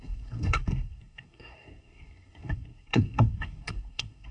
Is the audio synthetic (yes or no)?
yes